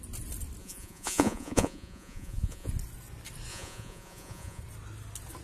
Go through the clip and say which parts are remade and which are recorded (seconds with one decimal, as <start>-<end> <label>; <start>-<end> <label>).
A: 0.0-0.6 recorded; 0.6-2.7 remade; 2.7-3.5 recorded; 3.5-4.6 remade; 4.6-5.4 recorded